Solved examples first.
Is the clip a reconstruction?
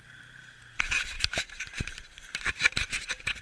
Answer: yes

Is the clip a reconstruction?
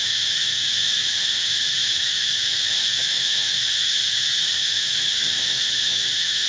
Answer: yes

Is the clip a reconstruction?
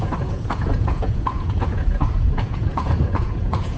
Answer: yes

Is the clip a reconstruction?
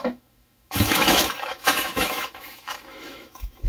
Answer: yes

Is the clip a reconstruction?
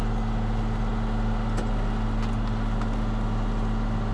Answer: no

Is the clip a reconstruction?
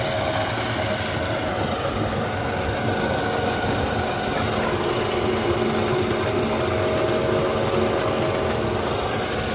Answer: no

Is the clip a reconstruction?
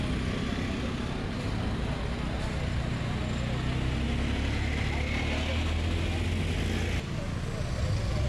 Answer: no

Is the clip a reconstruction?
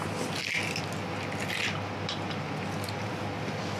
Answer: no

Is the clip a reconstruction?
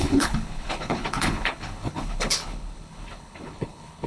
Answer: yes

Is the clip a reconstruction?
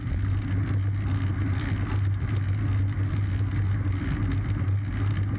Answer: no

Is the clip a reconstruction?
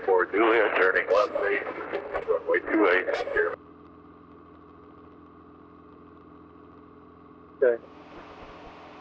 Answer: no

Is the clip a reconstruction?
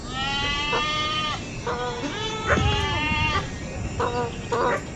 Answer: no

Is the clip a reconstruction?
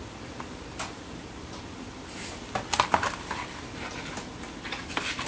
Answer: no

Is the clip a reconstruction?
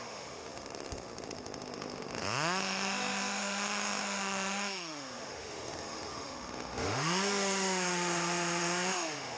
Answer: yes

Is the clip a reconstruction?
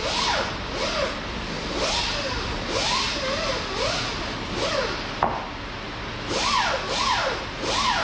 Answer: no